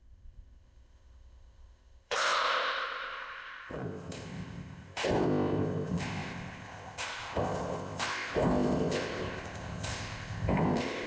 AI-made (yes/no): yes